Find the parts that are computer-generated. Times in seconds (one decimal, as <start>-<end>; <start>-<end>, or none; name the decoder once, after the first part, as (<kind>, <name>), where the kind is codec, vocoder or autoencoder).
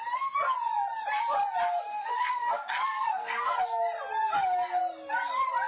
1.9-3.6 (codec, SNAC)